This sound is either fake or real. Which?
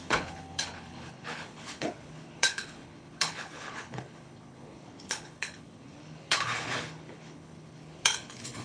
fake